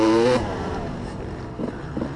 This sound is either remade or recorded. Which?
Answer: remade